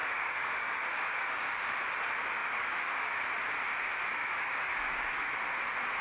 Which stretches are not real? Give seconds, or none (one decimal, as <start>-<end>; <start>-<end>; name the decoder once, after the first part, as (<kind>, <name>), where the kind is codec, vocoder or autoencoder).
0.0-1.6 (codec, DAC); 2.4-3.2; 4.1-5.3